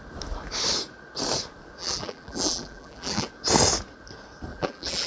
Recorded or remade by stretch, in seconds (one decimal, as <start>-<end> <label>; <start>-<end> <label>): 0.0-1.8 recorded; 1.8-3.3 remade; 3.3-4.5 recorded; 4.5-5.1 remade